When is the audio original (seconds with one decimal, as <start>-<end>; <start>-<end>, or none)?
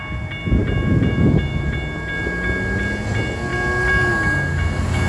0.0-0.6; 1.7-5.1